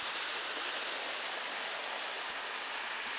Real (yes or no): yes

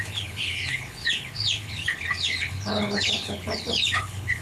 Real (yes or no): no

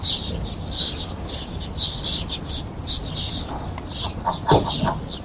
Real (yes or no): yes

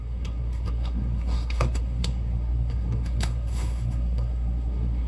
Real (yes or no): no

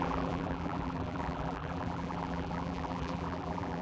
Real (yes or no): no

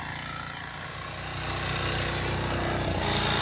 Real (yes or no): yes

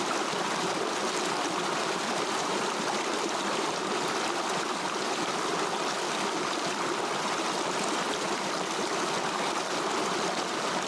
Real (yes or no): no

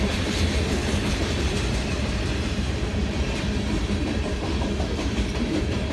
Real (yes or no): no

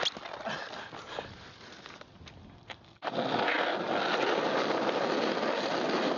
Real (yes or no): yes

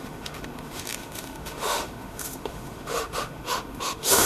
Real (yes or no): no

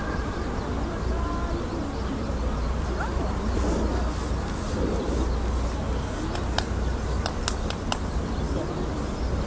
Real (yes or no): yes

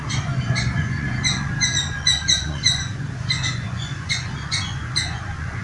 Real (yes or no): no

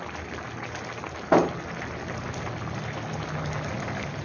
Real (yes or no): yes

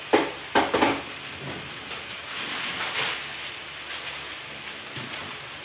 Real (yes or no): yes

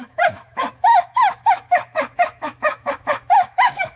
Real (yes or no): no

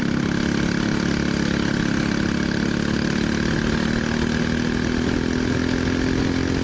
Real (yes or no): yes